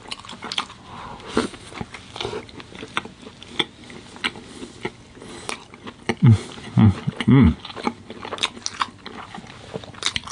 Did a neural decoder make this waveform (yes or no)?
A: no